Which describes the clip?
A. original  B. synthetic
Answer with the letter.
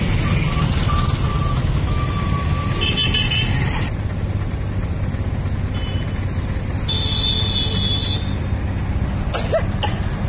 A